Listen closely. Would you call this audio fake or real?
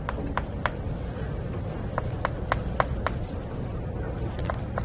fake